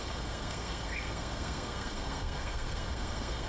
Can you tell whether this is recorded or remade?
remade